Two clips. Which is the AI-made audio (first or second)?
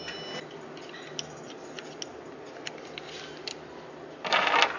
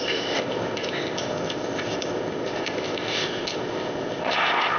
second